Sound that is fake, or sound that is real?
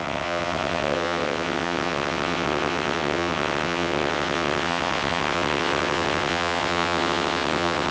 fake